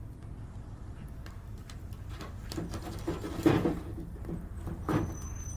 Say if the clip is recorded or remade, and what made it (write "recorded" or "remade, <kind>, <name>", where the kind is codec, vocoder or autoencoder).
recorded